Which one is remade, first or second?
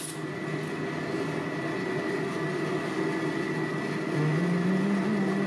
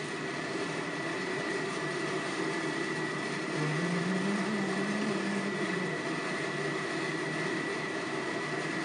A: second